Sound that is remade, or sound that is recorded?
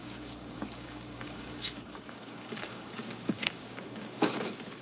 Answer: remade